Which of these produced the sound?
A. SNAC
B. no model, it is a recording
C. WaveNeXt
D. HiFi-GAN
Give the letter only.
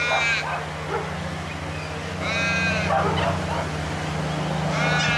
B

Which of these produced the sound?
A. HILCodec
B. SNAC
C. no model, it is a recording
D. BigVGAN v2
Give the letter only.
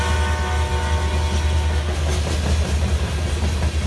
C